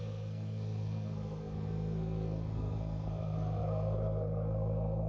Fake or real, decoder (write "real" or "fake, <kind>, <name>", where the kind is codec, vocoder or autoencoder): fake, codec, SNAC